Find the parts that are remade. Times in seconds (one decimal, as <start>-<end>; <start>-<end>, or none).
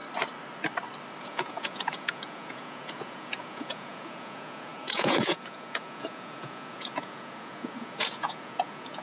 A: 1.2-9.0